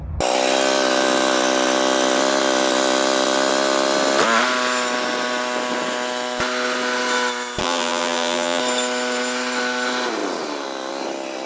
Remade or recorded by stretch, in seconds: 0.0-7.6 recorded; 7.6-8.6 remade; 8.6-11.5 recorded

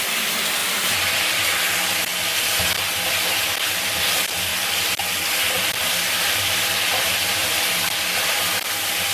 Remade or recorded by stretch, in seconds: 0.0-0.6 remade; 0.6-1.4 recorded; 1.4-2.1 remade; 2.1-3.1 recorded; 3.1-4.5 remade; 4.5-5.0 recorded; 5.0-5.7 remade; 5.7-6.2 recorded; 6.2-9.1 remade

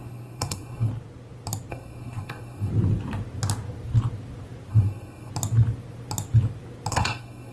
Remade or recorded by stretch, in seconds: 0.0-0.9 remade; 0.9-1.7 recorded; 1.7-2.7 remade; 2.7-4.7 recorded; 4.7-5.3 remade; 5.3-6.9 recorded; 6.9-7.5 remade

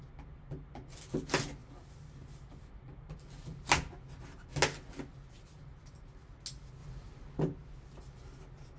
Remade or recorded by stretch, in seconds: 0.0-8.8 recorded

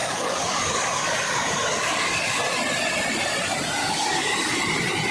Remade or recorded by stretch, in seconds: 0.0-2.4 remade; 2.4-3.8 recorded; 3.8-4.6 remade; 4.6-5.1 recorded